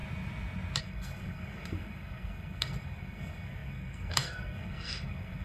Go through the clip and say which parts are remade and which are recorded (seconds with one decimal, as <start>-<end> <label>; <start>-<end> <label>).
0.0-0.8 recorded; 0.8-5.4 remade